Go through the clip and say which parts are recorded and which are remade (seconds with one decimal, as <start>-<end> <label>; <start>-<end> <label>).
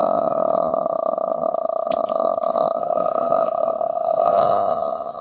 0.0-2.8 recorded; 2.8-4.4 remade; 4.4-5.2 recorded